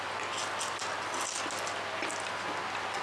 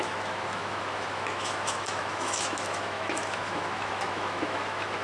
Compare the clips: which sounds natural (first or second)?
first